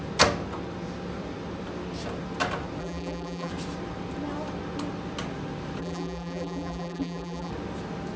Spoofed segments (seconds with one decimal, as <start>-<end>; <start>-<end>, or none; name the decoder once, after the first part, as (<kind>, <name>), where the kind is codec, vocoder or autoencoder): 2.8-3.5 (vocoder, BigVGAN v2); 5.8-7.5